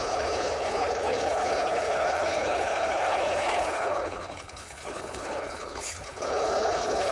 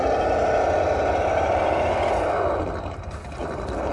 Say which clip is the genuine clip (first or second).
second